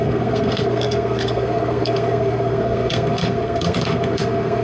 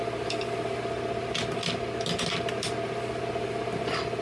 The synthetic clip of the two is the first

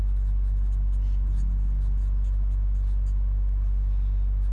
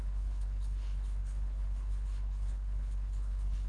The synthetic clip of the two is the second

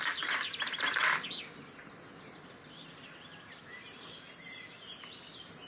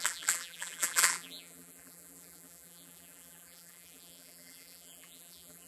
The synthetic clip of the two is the second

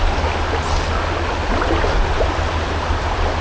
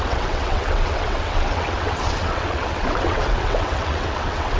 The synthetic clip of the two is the second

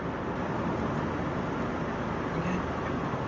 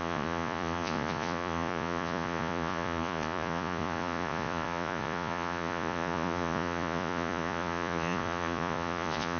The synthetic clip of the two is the second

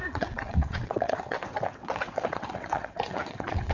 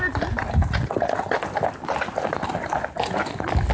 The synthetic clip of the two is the first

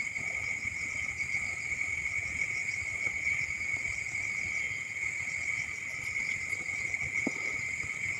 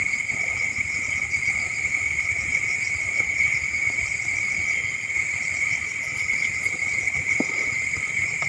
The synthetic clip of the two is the second